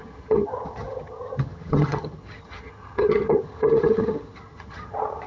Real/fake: fake